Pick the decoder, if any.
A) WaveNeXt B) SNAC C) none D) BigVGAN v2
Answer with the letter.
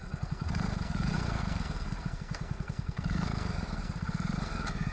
B